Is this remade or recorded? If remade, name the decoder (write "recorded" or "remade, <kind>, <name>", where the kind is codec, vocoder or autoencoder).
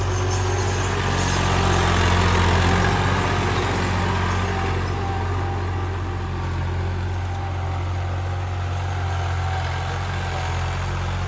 recorded